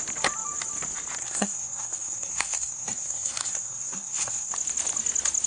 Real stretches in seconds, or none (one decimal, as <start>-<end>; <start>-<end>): 0.0-1.2; 4.5-5.5